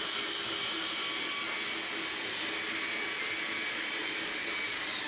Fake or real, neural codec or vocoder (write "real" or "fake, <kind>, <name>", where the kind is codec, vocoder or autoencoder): real